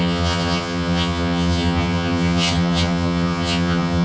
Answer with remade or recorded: remade